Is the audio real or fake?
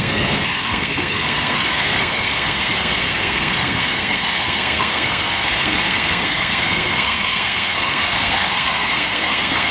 fake